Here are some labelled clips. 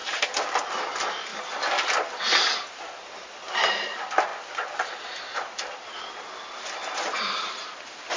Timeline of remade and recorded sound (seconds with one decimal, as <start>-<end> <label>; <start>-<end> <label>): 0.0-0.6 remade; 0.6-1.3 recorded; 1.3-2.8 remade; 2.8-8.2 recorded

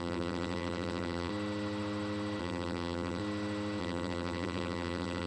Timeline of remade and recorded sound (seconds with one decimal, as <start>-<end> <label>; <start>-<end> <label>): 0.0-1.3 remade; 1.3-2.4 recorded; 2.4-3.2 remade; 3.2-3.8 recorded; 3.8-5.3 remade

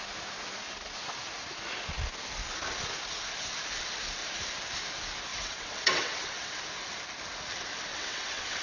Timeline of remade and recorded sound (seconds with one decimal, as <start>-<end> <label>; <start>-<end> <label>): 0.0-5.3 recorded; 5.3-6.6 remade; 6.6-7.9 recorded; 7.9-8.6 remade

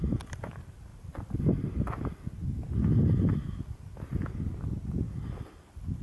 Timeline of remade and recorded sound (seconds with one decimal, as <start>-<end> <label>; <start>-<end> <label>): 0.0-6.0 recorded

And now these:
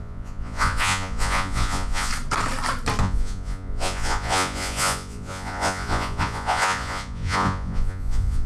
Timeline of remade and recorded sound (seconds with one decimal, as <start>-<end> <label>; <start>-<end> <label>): 0.0-2.1 remade; 2.1-3.0 recorded; 3.0-8.5 remade

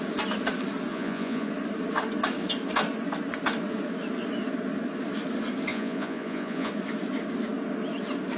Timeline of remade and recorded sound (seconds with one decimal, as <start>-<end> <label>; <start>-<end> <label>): 0.0-0.9 recorded; 0.9-1.5 remade; 1.5-5.7 recorded; 5.7-6.7 remade; 6.7-8.4 recorded

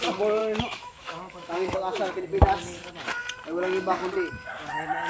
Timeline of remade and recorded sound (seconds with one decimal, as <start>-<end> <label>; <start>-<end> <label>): 0.0-0.4 recorded; 0.4-2.1 remade; 2.1-5.1 recorded

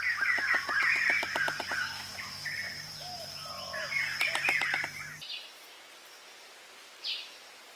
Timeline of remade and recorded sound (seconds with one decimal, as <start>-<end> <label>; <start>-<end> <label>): 0.0-7.8 recorded